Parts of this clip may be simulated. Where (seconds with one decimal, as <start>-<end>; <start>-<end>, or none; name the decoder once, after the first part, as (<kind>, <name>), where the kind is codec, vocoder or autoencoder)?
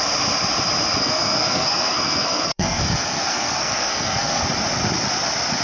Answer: 1.0-4.4 (codec, SNAC)